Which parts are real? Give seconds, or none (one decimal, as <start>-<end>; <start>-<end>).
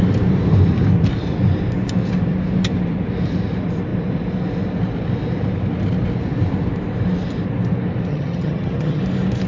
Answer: 0.0-8.1; 9.0-9.5